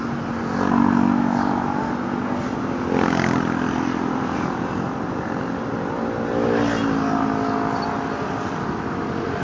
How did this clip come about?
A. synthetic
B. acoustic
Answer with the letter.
B